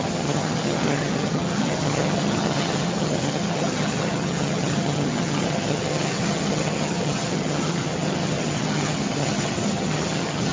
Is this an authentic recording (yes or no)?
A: no